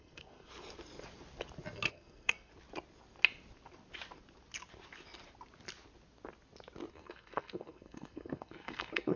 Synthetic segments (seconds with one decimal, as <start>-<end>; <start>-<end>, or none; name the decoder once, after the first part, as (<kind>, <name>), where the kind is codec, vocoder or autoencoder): 0.0-0.5 (codec, SNAC); 1.9-2.5; 6.9-9.2